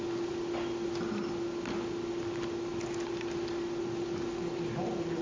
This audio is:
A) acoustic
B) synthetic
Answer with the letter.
A